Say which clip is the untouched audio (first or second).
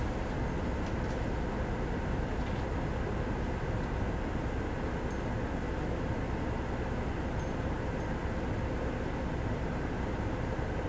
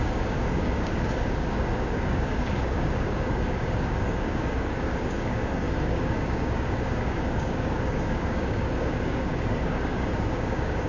first